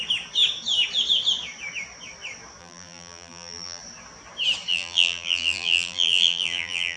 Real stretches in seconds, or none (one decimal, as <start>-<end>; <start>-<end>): 0.0-2.6; 3.8-4.7